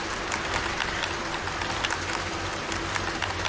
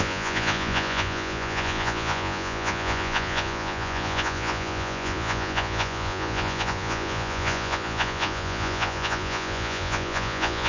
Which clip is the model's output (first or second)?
second